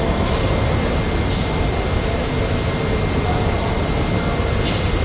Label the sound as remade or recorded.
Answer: recorded